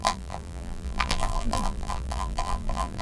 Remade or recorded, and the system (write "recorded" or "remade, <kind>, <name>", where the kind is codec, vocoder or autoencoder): remade, vocoder, BigVGAN v2